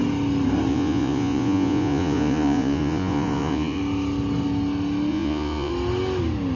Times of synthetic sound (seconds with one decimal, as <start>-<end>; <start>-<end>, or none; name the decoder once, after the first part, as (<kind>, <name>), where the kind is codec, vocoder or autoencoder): 0.7-3.8 (vocoder, Vocos); 5.1-5.7